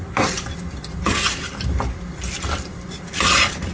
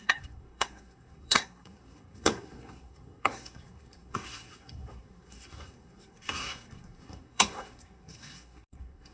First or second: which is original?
first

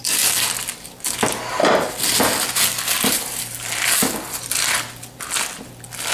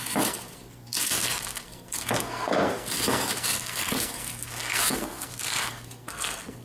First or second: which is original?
first